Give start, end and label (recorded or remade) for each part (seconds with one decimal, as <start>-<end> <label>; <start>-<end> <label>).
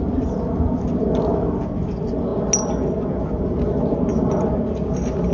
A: 0.0-5.3 recorded